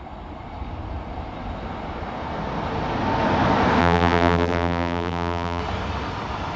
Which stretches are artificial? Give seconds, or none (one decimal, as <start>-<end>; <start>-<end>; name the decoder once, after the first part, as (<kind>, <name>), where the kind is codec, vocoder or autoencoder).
3.8-5.6 (vocoder, BigVGAN v2)